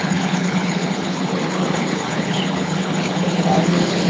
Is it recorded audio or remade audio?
remade